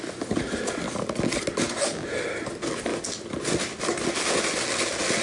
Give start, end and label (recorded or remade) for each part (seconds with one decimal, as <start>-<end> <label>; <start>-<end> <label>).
0.0-2.9 recorded; 2.9-3.8 remade; 3.8-5.2 recorded